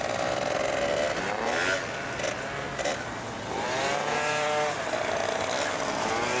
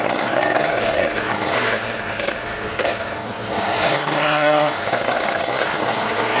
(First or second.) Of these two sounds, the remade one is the second